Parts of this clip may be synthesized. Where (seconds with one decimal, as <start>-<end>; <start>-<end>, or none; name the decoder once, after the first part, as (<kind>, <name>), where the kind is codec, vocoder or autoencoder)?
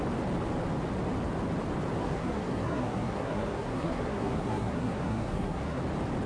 2.0-5.8 (codec, SNAC)